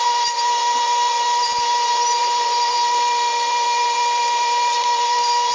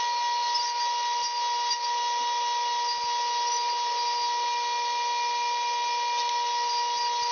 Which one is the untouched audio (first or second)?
second